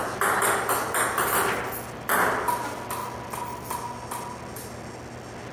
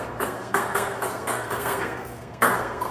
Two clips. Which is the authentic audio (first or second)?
first